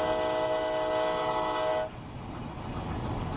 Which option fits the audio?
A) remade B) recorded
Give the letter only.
B